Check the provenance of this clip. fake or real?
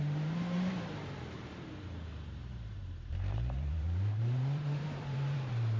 fake